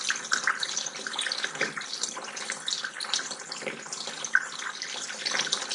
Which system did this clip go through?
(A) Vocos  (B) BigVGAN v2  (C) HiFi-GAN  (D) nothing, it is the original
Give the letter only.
D